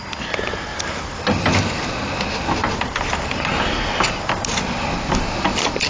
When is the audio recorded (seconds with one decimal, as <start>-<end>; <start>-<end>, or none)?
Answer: 0.0-5.9